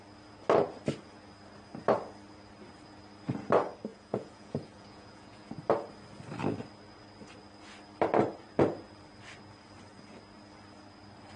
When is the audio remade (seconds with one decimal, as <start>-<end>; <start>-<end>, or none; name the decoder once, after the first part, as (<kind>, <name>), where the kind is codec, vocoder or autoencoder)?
3.9-5.5 (vocoder, Vocos)